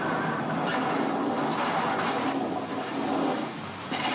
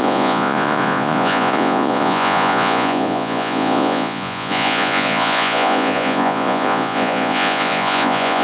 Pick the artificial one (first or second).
second